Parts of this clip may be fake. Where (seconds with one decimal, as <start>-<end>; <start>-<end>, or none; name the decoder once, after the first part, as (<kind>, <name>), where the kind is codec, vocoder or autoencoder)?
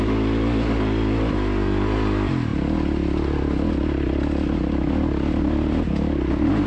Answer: none